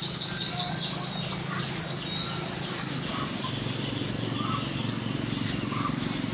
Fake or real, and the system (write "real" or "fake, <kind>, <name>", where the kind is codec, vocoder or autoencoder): real